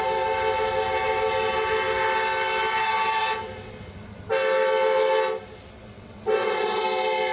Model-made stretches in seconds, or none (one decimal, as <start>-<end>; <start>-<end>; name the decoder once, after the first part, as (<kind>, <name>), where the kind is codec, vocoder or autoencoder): 5.8-6.8 (vocoder, WaveNeXt)